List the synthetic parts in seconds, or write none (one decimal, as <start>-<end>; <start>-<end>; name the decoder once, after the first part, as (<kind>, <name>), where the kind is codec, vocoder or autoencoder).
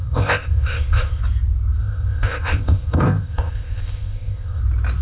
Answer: 0.0-1.2 (codec, ZipCodec); 1.8-4.6